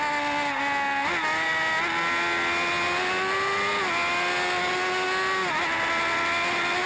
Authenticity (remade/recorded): recorded